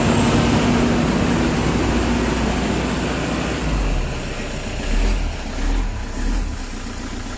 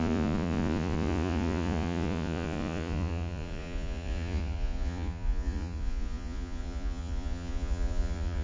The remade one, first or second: second